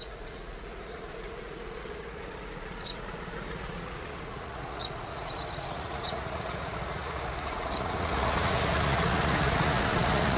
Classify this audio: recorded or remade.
remade